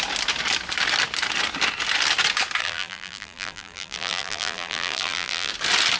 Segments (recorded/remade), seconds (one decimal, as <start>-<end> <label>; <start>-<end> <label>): 0.0-2.6 recorded; 2.6-5.5 remade; 5.5-6.0 recorded